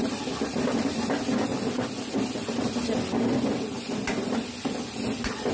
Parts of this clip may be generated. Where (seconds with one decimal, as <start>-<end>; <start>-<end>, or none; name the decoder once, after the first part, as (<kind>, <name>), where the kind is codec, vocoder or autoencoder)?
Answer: none